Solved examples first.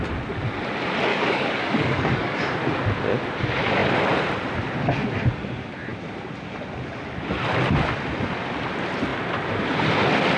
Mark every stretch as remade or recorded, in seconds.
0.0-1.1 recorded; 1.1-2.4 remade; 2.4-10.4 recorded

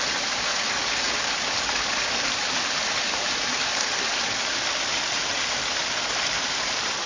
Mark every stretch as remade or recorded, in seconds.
0.0-0.5 remade; 0.5-2.4 recorded; 2.4-3.7 remade; 3.7-6.6 recorded; 6.6-7.1 remade

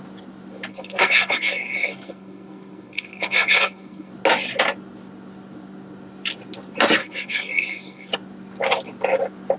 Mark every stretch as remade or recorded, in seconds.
0.0-0.7 recorded; 0.7-4.1 remade; 4.1-7.0 recorded; 7.0-8.1 remade; 8.1-9.6 recorded